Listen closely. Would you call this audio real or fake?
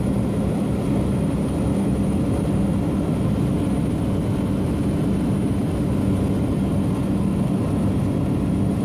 real